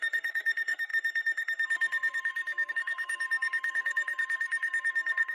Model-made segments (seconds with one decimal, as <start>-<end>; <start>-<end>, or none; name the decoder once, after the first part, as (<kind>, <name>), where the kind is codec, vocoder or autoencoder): 0.0-5.3 (codec, SNAC)